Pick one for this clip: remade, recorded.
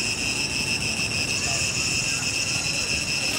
recorded